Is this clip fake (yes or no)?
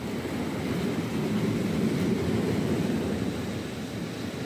no